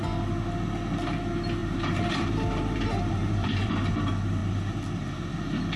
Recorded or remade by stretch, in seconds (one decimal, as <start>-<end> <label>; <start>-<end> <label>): 0.0-1.6 recorded; 1.6-3.7 remade; 3.7-5.8 recorded